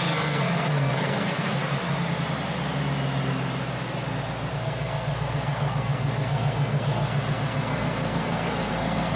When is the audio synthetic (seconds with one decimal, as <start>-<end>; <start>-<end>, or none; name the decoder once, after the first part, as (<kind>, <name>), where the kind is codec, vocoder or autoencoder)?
0.0-1.6 (codec, SNAC); 4.5-9.2